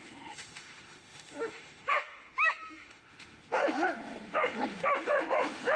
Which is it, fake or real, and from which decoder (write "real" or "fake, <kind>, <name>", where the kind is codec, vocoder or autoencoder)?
fake, autoencoder, DAC-VAE